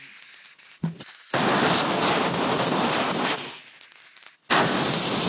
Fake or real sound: real